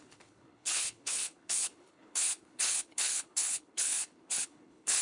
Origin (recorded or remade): remade